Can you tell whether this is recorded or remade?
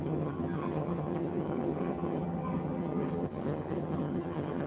remade